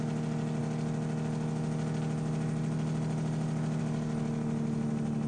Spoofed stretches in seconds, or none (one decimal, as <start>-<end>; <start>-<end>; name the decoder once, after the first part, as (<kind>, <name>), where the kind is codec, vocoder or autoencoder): none